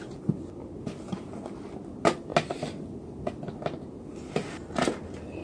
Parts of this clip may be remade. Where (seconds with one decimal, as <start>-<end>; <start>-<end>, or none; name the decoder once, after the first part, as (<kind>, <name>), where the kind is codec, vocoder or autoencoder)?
none